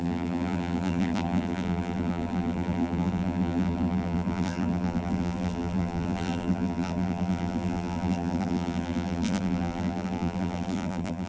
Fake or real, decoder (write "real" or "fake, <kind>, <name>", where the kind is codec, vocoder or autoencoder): fake, vocoder, BigVGAN v2